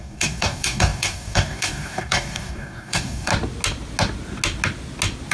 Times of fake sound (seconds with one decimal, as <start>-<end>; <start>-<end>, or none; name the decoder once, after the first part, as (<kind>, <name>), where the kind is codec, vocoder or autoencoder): 0.0-3.3 (codec, DAC)

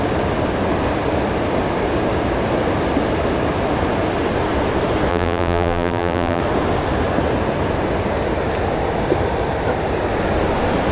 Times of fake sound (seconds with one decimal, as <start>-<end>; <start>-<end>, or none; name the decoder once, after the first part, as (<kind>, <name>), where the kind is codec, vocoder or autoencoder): 5.1-6.4 (vocoder, BigVGAN v2)

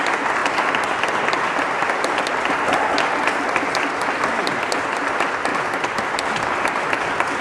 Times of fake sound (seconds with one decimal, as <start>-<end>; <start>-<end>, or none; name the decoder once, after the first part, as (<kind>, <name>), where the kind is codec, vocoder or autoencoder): 5.5-6.1 (vocoder, BigVGAN v2)

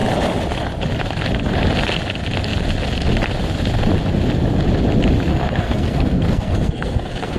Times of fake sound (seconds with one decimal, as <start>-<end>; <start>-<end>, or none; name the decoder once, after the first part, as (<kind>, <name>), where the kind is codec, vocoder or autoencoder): 5.3-7.4 (codec, SNAC)